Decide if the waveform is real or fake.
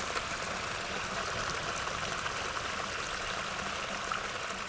real